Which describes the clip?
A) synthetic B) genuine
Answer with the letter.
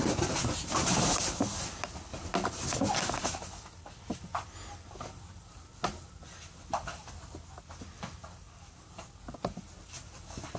B